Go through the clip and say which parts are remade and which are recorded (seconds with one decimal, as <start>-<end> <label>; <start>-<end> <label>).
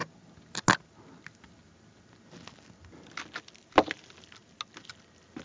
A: 0.0-5.4 recorded